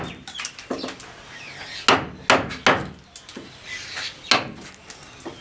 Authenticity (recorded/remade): recorded